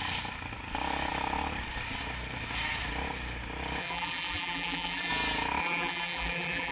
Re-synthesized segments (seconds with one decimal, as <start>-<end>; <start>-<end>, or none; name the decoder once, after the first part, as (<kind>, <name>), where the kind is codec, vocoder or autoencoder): 3.8-5.1 (vocoder, BigVGAN v2); 5.6-6.7